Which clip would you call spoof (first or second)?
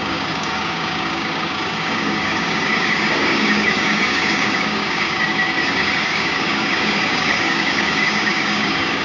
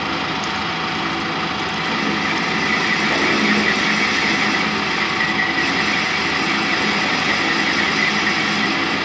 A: first